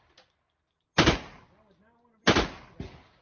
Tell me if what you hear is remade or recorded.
recorded